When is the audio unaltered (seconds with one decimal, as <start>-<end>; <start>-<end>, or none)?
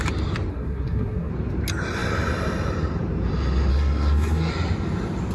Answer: 0.0-0.5; 1.3-3.7; 4.5-5.3